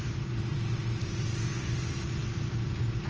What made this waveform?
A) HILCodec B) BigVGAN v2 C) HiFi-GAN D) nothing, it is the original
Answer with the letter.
D